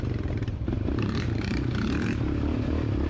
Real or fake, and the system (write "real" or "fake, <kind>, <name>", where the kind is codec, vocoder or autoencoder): fake, vocoder, BigVGAN v2